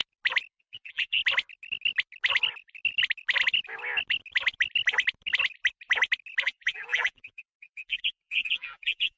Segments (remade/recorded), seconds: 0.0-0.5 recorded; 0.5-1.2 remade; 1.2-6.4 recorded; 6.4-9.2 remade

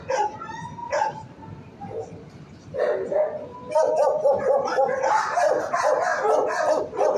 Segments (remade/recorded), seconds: 0.0-0.8 recorded; 0.8-1.8 remade; 1.8-7.2 recorded

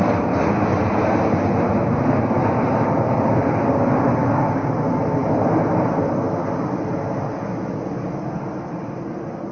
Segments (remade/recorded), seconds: 0.0-5.2 recorded; 5.2-5.9 remade; 5.9-9.5 recorded

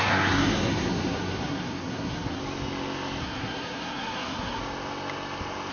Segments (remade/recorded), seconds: 0.0-2.4 remade; 2.4-3.2 recorded; 3.2-4.6 remade; 4.6-5.7 recorded

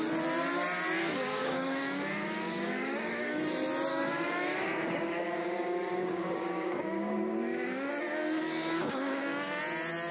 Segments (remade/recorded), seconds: 0.0-1.0 recorded; 1.0-3.4 remade; 3.4-3.9 recorded; 3.9-7.9 remade; 7.9-8.8 recorded; 8.8-9.6 remade; 9.6-10.1 recorded

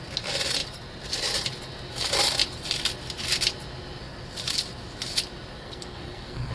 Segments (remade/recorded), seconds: 0.0-5.6 recorded; 5.6-6.5 remade

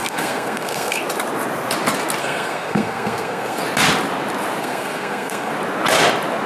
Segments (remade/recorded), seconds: 0.0-1.0 remade; 1.0-2.2 recorded; 2.2-3.6 remade; 3.6-4.6 recorded; 4.6-5.5 remade; 5.5-6.5 recorded

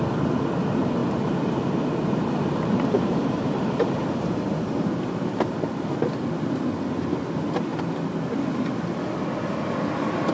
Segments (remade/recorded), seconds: 0.0-1.0 recorded; 1.0-5.4 remade; 5.4-10.3 recorded